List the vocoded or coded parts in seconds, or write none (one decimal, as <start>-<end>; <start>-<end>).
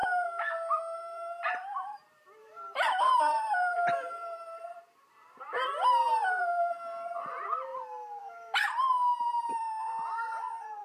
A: 0.0-4.8; 5.5-6.4